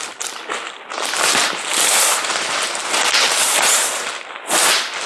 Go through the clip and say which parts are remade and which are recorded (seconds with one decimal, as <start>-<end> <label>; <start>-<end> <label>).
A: 0.0-1.4 recorded; 1.4-4.1 remade; 4.1-5.1 recorded